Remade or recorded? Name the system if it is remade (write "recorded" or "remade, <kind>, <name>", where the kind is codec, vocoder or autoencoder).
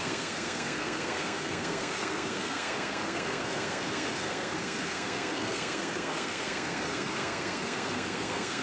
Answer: remade, codec, SNAC